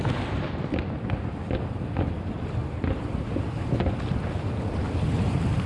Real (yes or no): yes